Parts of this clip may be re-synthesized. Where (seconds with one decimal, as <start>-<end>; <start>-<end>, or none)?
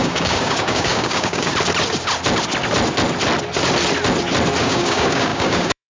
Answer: 0.0-1.5; 4.6-6.0